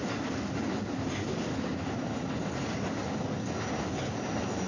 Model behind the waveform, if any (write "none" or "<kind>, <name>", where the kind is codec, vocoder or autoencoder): none